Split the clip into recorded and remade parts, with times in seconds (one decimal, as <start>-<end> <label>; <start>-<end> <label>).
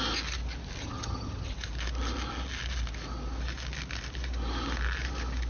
0.0-0.8 recorded; 0.8-1.5 remade; 1.5-5.5 recorded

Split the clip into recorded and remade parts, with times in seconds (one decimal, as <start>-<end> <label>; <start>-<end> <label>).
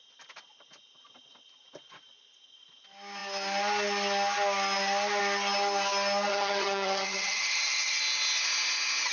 0.0-6.3 recorded; 6.3-8.0 remade; 8.0-9.1 recorded